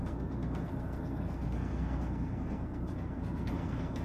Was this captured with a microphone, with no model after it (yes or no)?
no